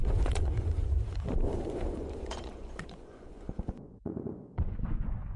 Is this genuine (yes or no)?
no